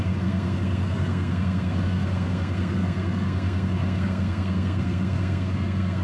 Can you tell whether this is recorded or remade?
remade